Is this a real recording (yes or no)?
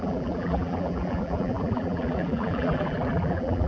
no